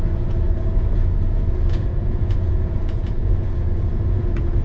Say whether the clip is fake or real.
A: fake